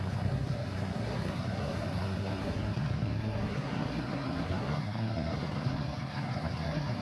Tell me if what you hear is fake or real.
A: fake